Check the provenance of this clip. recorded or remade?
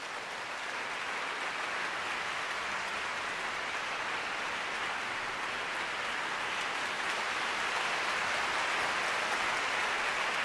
recorded